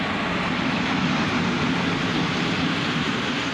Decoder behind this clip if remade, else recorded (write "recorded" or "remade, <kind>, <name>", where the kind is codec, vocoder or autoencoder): recorded